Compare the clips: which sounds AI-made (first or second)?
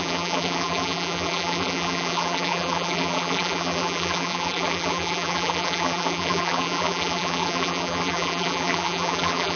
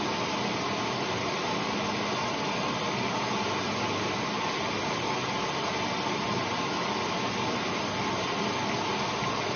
first